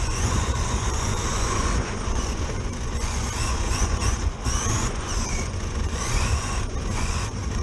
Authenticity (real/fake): fake